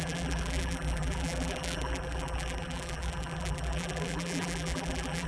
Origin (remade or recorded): remade